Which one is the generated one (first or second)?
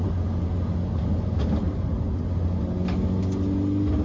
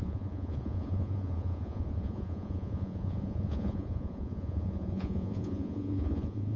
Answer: second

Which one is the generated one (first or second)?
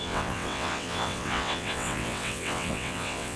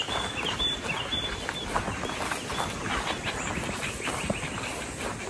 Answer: first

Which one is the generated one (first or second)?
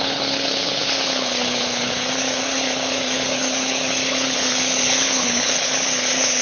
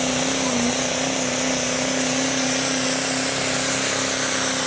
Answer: first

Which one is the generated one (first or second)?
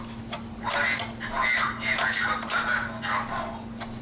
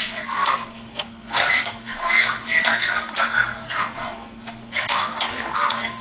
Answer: second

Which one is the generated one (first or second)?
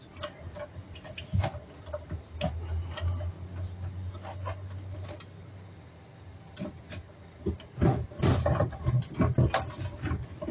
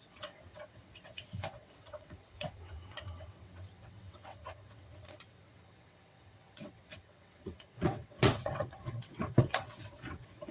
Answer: second